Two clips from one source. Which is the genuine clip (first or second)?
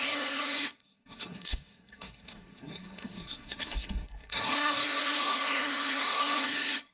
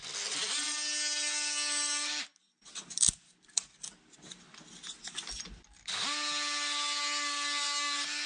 second